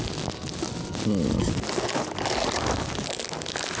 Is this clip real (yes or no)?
yes